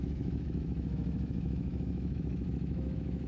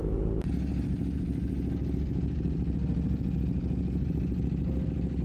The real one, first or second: second